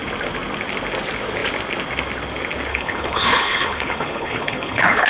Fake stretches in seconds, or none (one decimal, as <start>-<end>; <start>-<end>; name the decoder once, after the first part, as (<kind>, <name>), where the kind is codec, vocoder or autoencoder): 2.7-5.1 (codec, HILCodec)

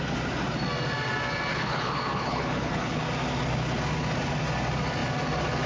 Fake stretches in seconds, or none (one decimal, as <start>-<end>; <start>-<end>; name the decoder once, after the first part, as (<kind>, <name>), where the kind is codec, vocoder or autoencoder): 1.5-3.0 (codec, HILCodec)

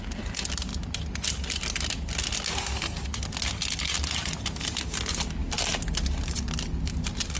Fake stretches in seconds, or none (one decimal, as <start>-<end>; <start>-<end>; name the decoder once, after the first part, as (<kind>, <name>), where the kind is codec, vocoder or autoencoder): none

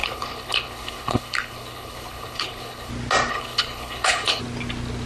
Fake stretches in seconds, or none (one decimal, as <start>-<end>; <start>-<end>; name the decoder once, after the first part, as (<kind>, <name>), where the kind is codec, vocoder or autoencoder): 0.0-2.9 (codec, HILCodec); 3.3-4.4